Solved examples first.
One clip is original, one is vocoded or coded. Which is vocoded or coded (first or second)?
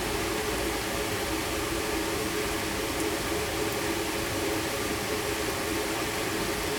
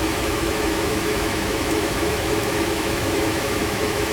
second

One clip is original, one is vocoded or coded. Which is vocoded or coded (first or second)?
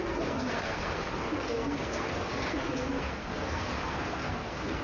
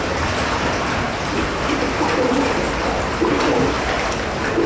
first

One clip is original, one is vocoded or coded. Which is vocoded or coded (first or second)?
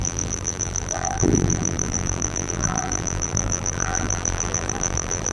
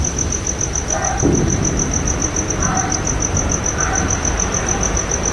first